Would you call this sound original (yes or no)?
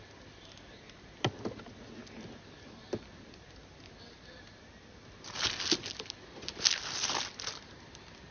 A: yes